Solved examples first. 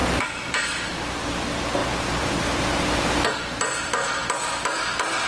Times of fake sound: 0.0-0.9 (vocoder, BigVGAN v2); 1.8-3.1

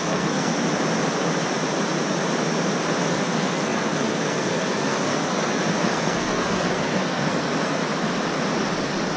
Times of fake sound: 0.0-0.5 (codec, SNAC); 2.8-7.8

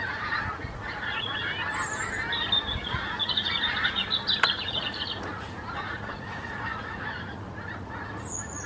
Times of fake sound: 0.0-1.3 (vocoder, Vocos); 2.7-4.0; 4.6-8.7